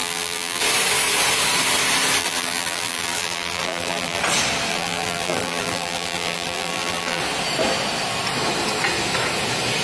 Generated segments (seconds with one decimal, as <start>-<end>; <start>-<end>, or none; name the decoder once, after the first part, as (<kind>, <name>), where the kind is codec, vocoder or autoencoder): 0.0-0.6 (vocoder, BigVGAN v2); 2.2-4.2; 4.7-7.2